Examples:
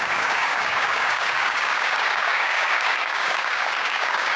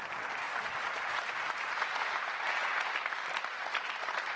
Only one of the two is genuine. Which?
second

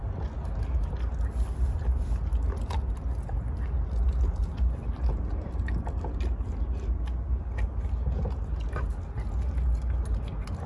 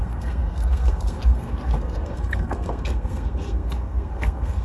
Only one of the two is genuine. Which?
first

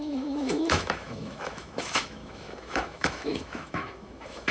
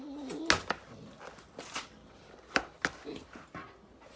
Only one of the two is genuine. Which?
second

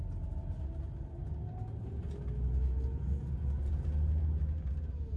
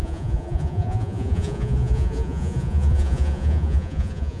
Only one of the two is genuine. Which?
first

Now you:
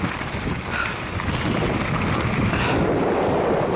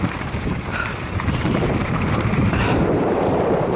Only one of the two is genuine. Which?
first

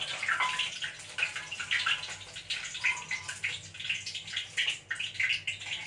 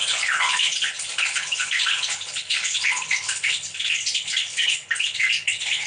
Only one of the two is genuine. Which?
first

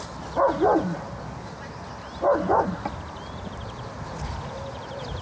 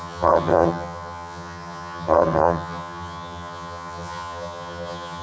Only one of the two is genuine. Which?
first